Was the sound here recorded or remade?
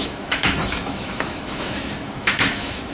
remade